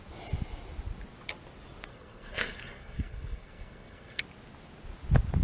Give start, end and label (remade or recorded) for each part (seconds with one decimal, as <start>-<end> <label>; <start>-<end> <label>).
0.0-1.9 recorded; 1.9-4.2 remade; 4.2-5.4 recorded